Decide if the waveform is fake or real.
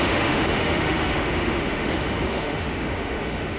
fake